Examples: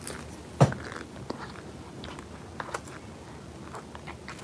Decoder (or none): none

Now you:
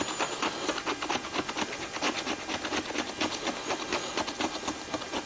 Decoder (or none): none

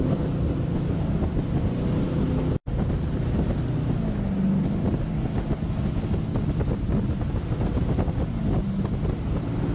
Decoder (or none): none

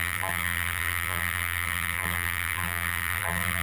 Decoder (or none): vocoder, BigVGAN v2